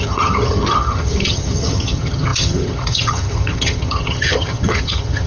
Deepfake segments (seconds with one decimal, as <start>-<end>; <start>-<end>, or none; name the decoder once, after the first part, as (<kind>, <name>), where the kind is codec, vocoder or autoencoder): 0.0-5.3 (vocoder, HiFi-GAN)